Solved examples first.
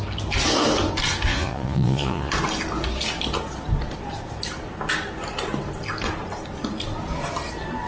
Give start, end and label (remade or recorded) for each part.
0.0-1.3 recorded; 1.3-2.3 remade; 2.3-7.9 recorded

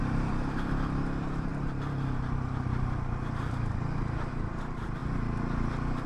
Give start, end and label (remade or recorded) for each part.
0.0-5.0 remade; 5.0-6.1 recorded

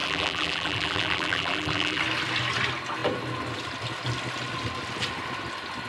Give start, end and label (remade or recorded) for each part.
0.0-2.0 remade; 2.0-5.9 recorded

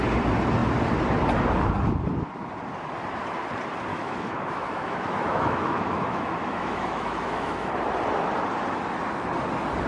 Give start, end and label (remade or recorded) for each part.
0.0-3.9 recorded; 3.9-7.7 remade; 7.7-9.9 recorded

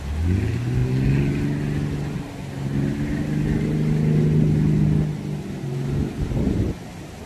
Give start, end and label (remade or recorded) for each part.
0.0-7.3 recorded

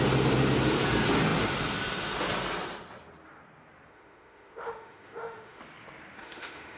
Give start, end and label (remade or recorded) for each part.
0.0-3.9 recorded; 3.9-5.6 remade; 5.6-6.2 recorded; 6.2-6.8 remade

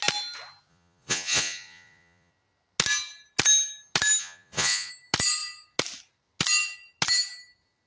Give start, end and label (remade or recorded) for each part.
0.0-0.7 recorded; 0.7-2.3 remade; 2.3-4.2 recorded; 4.2-4.9 remade; 4.9-7.9 recorded